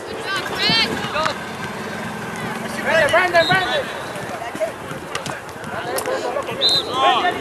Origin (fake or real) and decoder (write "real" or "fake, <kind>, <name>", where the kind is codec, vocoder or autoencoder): real